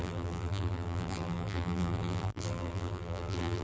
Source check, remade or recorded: remade